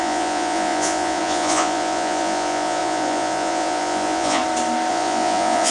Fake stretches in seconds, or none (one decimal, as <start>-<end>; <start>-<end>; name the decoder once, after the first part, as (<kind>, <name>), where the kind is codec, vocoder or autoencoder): 0.0-4.4 (vocoder, Vocos); 4.9-5.7